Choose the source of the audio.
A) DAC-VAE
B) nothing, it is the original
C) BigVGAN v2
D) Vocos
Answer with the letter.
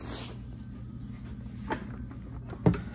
B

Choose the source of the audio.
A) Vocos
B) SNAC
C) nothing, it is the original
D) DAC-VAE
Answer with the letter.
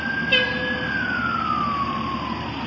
C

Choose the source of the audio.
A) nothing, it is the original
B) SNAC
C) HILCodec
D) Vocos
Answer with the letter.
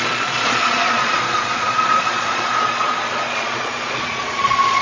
D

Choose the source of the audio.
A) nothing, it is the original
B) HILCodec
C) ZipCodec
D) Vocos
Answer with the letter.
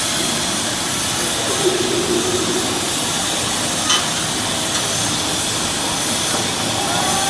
A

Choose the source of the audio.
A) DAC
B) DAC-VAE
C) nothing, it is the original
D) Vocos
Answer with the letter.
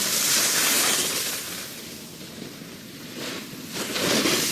C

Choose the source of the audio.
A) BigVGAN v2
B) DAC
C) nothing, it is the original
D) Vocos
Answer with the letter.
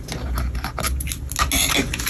C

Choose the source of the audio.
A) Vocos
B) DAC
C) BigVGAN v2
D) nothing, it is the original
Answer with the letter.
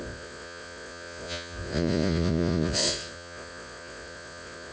A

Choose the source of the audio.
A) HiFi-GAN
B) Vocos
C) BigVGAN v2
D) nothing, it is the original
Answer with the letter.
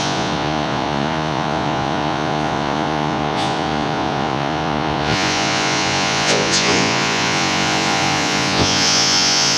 B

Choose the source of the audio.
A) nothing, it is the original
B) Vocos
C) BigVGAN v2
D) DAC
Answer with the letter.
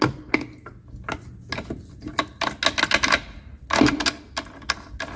A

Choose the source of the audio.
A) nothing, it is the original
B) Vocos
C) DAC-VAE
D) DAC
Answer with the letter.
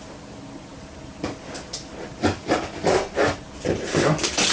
A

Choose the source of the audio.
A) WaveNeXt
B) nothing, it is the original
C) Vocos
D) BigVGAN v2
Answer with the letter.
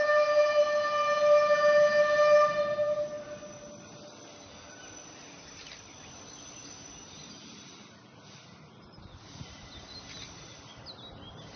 B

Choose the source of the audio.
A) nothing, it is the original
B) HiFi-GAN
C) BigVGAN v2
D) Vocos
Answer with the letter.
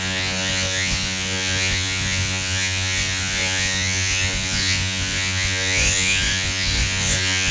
D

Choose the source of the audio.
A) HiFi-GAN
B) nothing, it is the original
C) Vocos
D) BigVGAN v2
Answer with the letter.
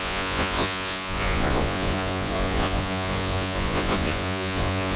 C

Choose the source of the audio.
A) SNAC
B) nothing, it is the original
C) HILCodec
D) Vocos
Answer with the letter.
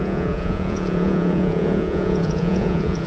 D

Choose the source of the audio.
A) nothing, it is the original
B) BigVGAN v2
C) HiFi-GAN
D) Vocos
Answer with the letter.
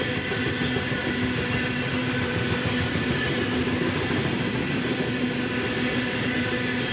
A